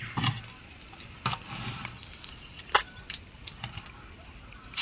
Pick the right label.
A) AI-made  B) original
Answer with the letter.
B